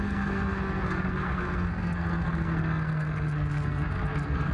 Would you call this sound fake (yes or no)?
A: yes